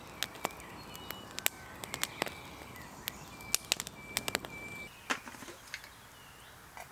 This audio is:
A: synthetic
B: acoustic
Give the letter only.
B